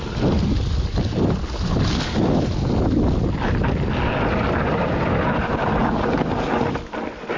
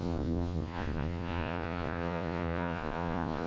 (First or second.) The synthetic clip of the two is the second